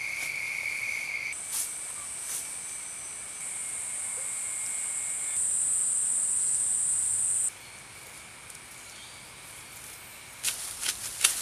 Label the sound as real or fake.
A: real